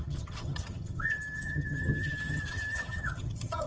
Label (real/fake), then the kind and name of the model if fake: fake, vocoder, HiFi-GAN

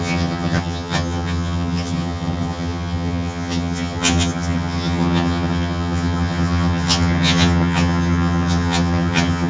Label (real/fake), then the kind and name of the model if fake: fake, vocoder, HiFi-GAN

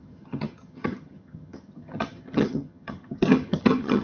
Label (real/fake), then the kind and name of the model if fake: fake, vocoder, HiFi-GAN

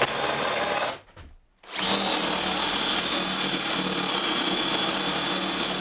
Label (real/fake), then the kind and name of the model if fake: real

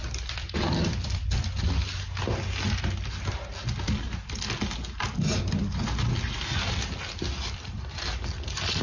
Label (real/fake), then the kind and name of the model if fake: real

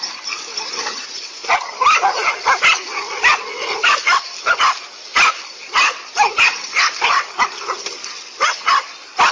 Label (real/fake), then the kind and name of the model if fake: real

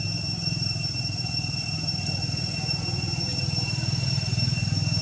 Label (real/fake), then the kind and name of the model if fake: real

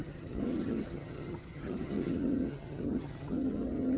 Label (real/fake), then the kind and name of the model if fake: fake, vocoder, HiFi-GAN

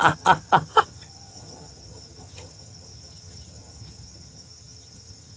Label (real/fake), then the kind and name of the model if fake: fake, vocoder, HiFi-GAN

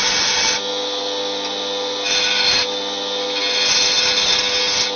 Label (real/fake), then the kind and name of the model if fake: real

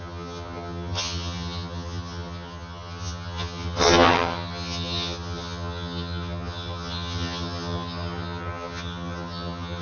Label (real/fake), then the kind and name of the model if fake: fake, vocoder, HiFi-GAN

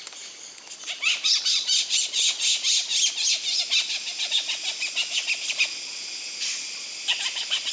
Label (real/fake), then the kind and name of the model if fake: real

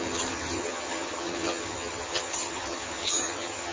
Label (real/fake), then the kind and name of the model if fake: fake, vocoder, HiFi-GAN